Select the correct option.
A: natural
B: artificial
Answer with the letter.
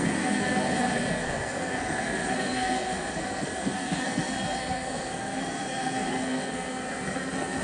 B